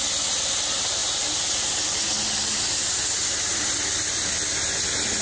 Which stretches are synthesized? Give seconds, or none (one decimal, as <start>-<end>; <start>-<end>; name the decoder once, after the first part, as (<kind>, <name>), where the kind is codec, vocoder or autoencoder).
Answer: none